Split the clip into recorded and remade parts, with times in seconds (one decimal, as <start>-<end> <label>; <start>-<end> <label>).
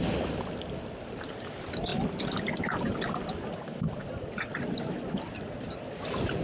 0.0-6.4 recorded